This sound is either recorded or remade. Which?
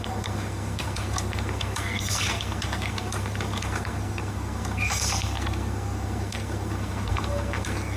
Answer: remade